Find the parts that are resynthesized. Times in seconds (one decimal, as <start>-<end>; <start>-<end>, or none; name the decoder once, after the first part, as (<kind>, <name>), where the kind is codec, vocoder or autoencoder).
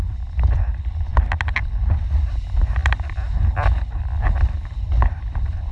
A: none